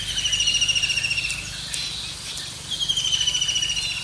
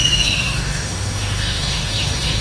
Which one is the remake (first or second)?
second